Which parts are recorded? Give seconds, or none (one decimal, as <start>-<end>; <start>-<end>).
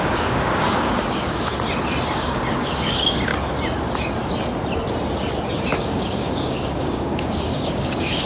1.5-2.1; 3.3-5.8